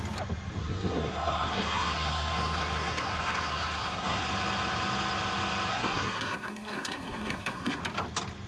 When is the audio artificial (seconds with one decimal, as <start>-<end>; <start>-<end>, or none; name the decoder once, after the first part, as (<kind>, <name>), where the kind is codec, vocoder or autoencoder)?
0.6-4.2 (codec, SNAC); 5.7-7.8

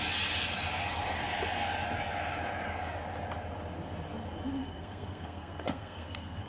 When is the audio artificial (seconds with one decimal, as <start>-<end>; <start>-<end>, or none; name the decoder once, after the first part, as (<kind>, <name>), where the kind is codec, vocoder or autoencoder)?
4.6-6.5 (codec, SNAC)

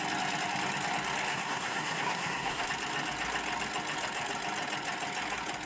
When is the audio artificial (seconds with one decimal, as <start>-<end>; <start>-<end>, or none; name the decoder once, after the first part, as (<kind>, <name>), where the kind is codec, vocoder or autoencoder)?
1.3-2.7 (codec, SNAC)

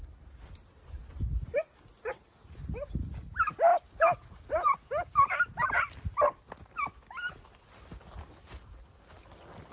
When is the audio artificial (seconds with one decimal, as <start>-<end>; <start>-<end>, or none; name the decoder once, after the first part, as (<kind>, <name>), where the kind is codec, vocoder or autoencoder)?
none